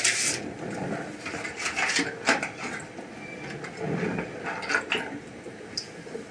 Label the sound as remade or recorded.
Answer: recorded